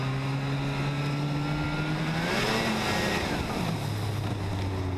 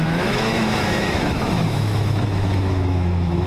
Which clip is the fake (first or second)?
second